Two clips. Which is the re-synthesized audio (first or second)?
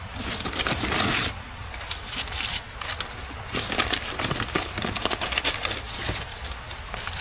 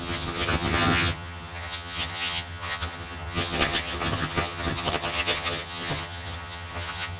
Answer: second